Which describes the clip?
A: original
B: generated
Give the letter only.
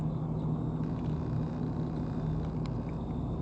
A